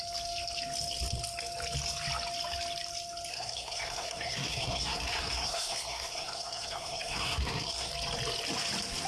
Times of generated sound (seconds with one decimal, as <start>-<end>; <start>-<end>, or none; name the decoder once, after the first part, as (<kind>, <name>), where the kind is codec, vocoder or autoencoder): 3.3-7.9 (codec, SNAC)